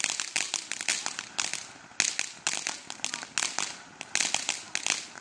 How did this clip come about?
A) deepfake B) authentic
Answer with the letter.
B